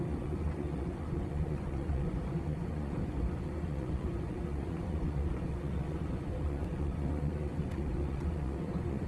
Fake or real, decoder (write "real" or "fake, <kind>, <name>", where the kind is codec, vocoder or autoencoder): fake, vocoder, Vocos